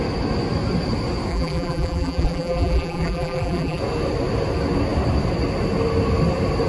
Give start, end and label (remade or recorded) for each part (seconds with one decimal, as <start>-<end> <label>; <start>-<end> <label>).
0.0-1.3 recorded; 1.3-3.8 remade; 3.8-6.7 recorded